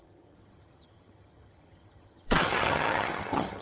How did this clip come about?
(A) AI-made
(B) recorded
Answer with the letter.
A